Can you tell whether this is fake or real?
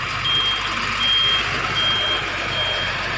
real